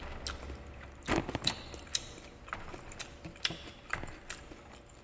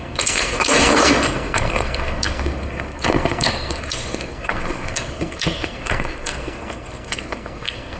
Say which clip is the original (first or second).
first